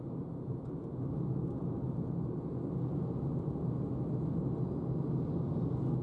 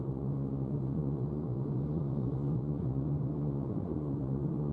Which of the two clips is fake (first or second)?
second